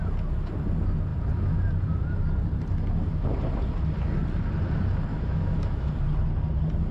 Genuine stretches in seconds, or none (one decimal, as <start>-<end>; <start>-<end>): 0.0-5.1; 5.9-6.9